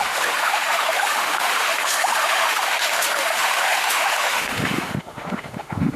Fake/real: fake